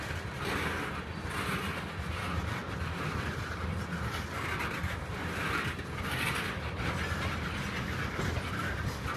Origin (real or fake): real